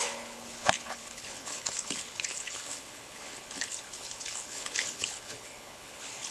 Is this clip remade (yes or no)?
yes